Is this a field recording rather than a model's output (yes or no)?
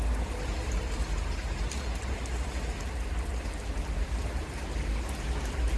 yes